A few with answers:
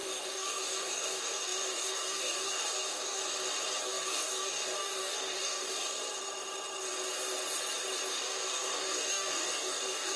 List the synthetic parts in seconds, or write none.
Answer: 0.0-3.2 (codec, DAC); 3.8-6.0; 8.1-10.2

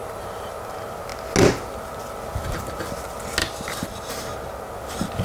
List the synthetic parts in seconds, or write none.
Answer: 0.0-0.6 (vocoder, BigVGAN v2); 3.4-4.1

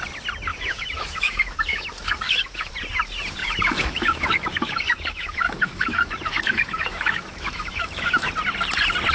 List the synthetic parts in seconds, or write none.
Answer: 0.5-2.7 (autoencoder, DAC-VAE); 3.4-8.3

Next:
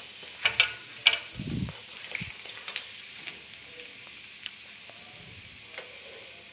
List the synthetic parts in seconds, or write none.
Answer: none

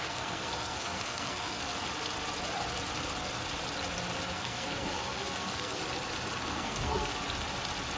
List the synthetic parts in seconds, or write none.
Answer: 0.0-1.7 (codec, SNAC); 4.3-5.8; 6.5-7.1

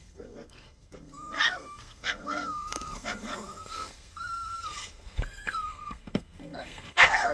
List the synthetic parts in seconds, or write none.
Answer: 0.0-7.3 (codec, SNAC)

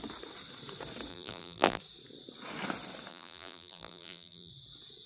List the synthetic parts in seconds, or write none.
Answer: 1.1-1.8 (vocoder, BigVGAN v2); 3.1-4.5

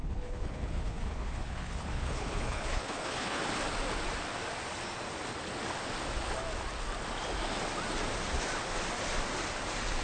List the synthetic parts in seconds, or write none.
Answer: 0.0-3.4 (codec, HILCodec)